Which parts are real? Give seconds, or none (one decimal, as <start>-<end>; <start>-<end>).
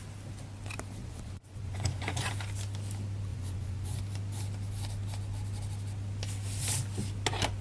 0.0-1.0; 2.3-3.3; 4.0-7.6